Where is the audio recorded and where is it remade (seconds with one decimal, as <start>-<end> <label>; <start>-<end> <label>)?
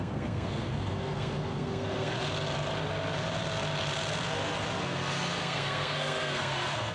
0.0-2.1 remade; 2.1-4.8 recorded; 4.8-6.9 remade